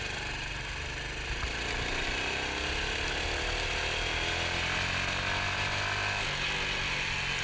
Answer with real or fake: real